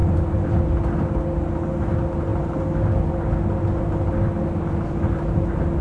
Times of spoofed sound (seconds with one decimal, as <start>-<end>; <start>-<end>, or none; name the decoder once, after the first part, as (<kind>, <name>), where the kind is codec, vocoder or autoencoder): none